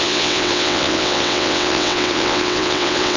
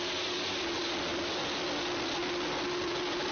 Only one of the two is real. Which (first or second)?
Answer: second